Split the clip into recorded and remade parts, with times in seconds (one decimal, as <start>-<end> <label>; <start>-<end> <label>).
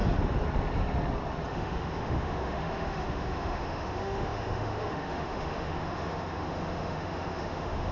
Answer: 0.0-1.5 recorded; 1.5-7.9 remade